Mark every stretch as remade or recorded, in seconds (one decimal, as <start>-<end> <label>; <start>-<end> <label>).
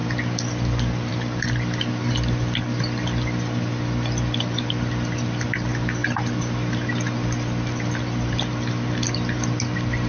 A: 0.0-10.1 recorded